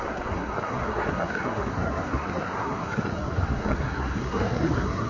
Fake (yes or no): yes